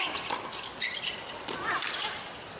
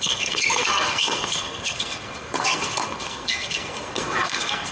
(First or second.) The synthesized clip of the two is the second